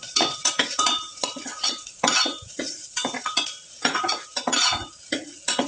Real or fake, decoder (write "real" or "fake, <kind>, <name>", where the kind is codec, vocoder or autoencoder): fake, vocoder, Vocos